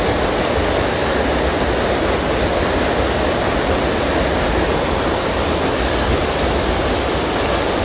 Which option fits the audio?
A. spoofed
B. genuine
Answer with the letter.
B